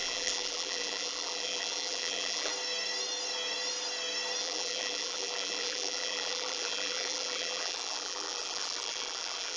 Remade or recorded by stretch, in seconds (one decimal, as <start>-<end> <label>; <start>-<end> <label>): 0.0-2.5 remade; 2.5-4.4 recorded; 4.4-9.6 remade